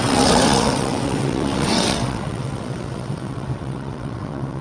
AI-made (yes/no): yes